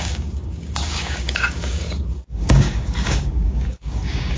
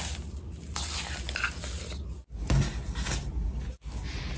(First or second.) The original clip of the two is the second